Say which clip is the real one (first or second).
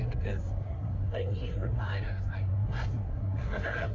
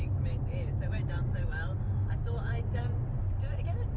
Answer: second